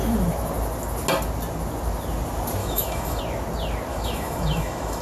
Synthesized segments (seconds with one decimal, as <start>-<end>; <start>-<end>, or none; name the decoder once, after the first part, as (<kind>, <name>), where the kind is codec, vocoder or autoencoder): 2.6-3.2 (autoencoder, DAC-VAE); 3.9-5.0